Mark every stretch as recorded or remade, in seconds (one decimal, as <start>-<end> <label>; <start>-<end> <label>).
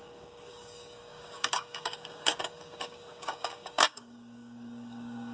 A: 0.0-5.3 remade